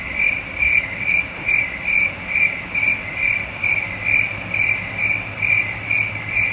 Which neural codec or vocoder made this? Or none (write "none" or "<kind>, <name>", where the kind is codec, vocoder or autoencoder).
none